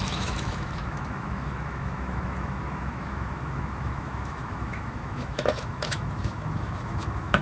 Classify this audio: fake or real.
fake